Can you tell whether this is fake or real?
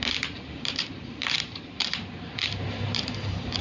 fake